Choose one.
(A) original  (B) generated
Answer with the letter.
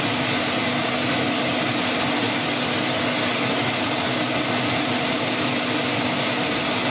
A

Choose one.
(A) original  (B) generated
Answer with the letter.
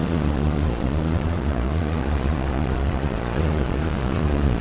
B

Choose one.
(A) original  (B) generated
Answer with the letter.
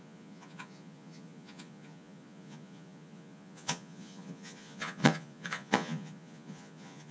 B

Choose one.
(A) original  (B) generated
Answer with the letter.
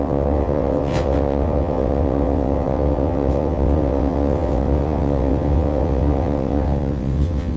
B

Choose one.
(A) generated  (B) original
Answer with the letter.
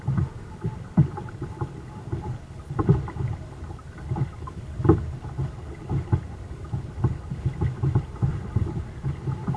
B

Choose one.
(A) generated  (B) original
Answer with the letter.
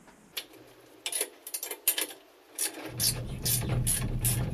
B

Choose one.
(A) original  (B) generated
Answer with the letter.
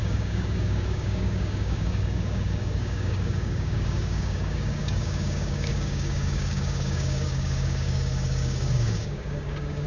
B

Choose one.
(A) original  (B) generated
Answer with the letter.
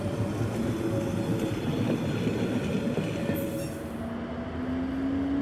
A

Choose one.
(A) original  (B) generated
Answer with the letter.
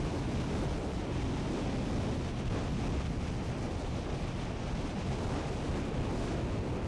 A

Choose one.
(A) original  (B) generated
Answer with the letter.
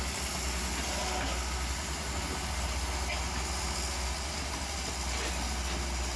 A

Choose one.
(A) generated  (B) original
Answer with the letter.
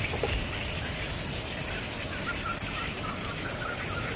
B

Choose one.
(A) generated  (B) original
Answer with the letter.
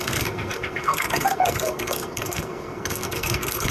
A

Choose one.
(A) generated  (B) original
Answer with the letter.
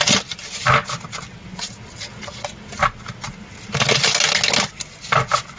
B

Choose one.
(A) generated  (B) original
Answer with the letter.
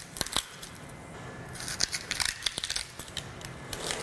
B